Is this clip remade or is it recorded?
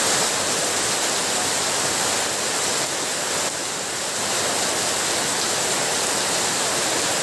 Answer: recorded